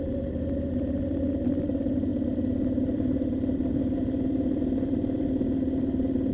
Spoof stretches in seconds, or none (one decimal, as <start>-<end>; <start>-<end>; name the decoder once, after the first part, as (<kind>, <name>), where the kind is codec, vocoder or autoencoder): none